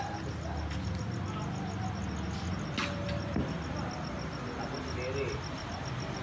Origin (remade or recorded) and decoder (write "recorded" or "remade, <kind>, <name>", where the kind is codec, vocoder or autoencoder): recorded